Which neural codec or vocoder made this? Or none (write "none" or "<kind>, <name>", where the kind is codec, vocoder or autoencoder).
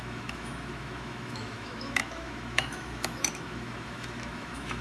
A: autoencoder, DAC-VAE